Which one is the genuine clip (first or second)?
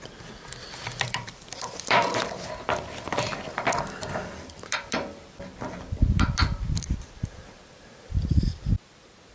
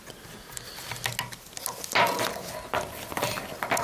second